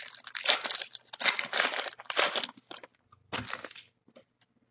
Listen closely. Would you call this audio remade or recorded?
recorded